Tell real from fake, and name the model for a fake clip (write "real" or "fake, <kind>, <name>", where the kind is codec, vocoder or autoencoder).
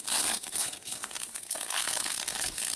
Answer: fake, codec, SNAC